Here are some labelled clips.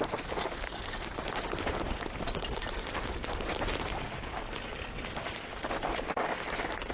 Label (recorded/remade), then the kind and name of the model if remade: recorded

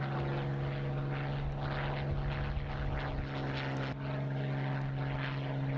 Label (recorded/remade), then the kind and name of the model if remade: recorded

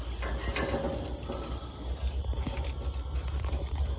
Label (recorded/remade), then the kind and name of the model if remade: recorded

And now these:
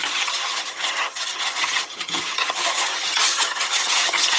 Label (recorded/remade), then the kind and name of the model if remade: remade, vocoder, HiFi-GAN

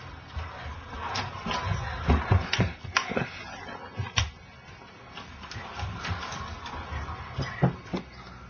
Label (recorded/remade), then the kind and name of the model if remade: recorded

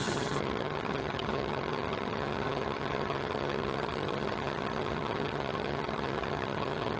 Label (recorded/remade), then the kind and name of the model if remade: remade, vocoder, HiFi-GAN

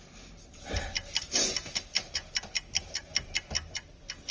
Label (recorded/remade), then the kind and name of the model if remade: recorded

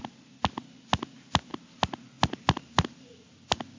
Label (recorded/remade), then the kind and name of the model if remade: recorded